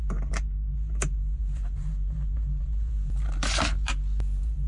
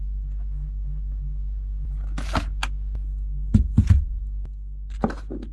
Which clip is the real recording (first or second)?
second